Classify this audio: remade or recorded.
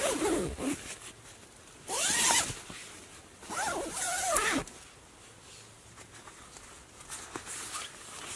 recorded